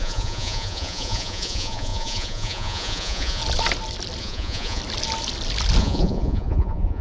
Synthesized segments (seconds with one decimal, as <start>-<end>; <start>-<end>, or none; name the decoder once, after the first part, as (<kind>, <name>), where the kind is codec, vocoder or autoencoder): 0.0-3.4 (vocoder, Vocos); 4.2-4.8; 5.8-7.0

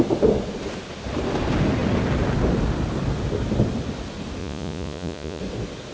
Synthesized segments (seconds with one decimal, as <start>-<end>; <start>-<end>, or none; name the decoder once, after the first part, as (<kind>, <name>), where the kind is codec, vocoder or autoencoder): 4.4-5.4 (vocoder, Vocos)